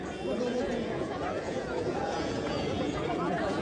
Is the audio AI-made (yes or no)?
yes